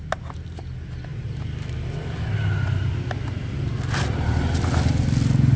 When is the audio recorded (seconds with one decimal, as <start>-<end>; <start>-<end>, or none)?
0.0-5.6